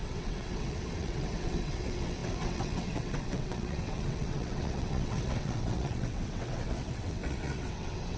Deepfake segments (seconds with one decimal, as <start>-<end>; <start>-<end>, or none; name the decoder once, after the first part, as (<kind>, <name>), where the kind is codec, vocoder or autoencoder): 0.0-8.2 (vocoder, WaveNeXt)